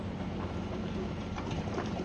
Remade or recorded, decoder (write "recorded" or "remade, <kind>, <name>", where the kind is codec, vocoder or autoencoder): remade, vocoder, BigVGAN v2